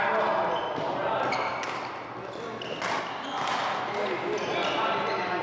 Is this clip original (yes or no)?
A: yes